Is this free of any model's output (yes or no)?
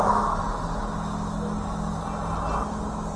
yes